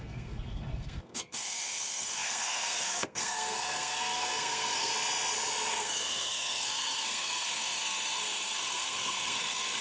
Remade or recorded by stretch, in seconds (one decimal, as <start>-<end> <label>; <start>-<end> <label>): 0.0-4.9 remade; 4.9-5.7 recorded; 5.7-9.8 remade